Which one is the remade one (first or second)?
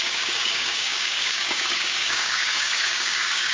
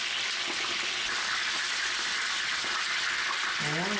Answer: first